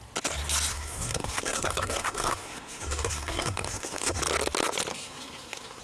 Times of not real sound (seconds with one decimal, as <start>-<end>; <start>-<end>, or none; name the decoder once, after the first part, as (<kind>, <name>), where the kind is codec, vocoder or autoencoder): 0.7-4.2 (codec, SNAC); 4.9-5.8